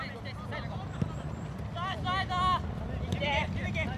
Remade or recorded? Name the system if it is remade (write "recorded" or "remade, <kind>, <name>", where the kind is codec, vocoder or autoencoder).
recorded